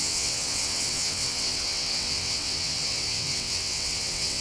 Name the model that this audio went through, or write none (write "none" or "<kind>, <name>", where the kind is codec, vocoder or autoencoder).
vocoder, WaveNeXt